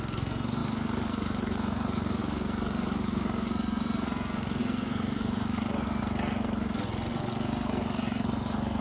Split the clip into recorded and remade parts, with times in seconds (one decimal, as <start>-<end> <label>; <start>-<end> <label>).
0.0-8.8 remade